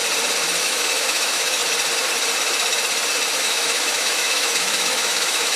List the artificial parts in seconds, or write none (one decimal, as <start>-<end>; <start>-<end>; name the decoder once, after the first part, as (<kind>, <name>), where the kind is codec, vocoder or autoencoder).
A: 0.6-1.6 (autoencoder, DAC-VAE); 3.4-5.6